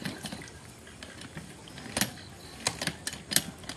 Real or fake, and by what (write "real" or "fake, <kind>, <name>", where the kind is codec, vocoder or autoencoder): real